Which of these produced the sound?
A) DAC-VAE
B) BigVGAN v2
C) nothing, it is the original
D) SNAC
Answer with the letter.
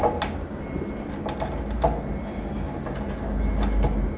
C